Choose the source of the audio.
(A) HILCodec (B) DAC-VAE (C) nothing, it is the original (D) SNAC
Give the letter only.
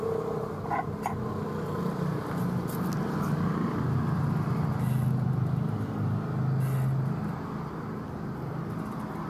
C